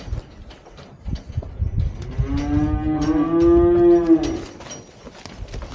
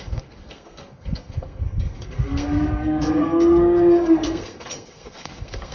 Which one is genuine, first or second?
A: first